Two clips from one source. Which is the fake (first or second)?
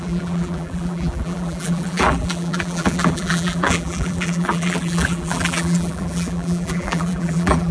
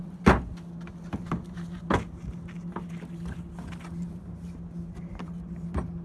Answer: first